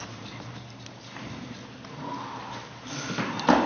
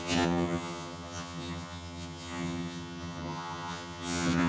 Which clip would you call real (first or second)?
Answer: first